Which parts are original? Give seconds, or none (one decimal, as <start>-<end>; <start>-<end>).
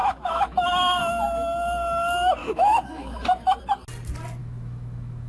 1.0-2.4; 3.6-4.4